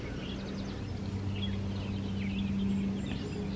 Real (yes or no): yes